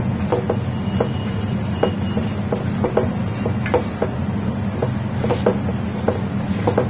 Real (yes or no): yes